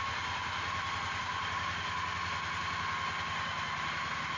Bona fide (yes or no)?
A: yes